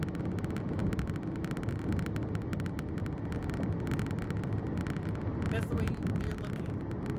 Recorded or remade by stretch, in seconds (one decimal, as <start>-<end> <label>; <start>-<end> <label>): 0.0-7.2 recorded

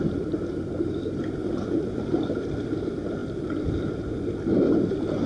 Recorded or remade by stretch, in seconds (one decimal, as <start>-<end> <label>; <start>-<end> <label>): 0.0-1.4 recorded; 1.4-2.0 remade; 2.0-5.3 recorded

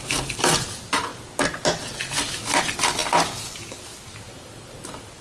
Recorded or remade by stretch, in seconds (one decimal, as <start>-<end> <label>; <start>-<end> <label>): 0.0-5.2 recorded

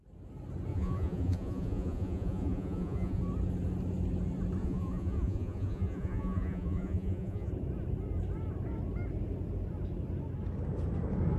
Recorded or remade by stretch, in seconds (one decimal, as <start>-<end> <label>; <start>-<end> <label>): 0.0-0.7 recorded; 0.7-3.2 remade; 3.2-4.6 recorded; 4.6-7.5 remade; 7.5-11.4 recorded